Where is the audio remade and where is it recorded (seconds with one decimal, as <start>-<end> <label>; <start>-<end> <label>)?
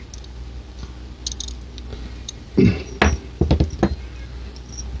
0.0-1.9 recorded; 1.9-2.6 remade; 2.6-5.0 recorded